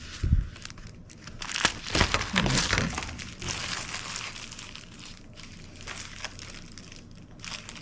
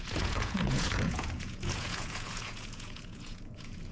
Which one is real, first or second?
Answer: first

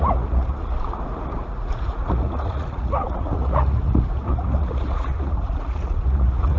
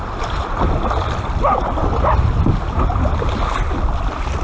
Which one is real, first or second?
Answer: second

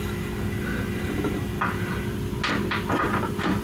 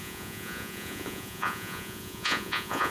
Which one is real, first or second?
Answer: first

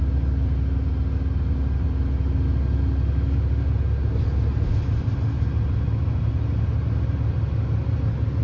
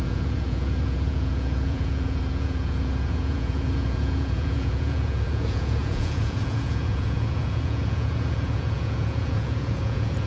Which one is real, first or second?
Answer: first